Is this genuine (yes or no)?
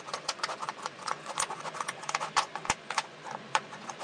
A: no